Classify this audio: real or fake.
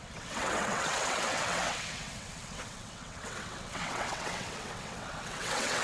fake